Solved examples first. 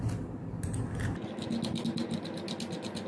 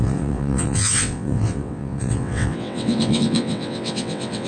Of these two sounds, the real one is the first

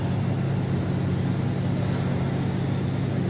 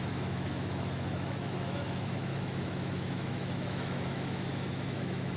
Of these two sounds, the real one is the first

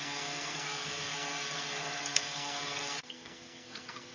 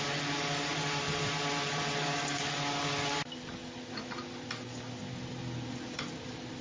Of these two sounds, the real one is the second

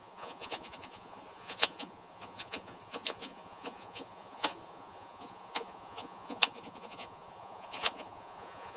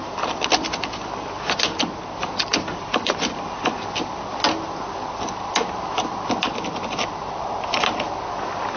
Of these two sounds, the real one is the second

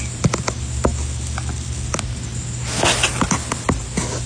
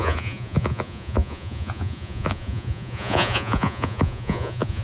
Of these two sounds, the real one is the first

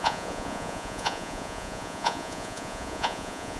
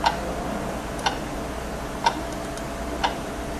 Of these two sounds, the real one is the second